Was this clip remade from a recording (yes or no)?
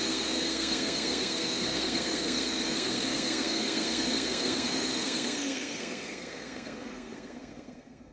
yes